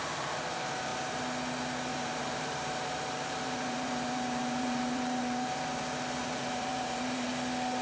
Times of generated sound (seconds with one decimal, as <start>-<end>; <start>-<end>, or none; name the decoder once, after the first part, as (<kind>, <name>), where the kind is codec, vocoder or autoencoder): 1.9-5.6 (vocoder, BigVGAN v2); 6.2-7.3